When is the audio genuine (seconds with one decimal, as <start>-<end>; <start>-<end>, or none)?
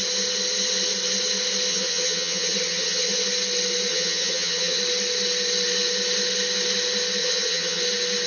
0.0-1.7; 3.2-3.9; 4.8-7.2; 7.8-8.3